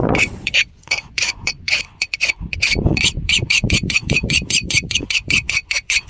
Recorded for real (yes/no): no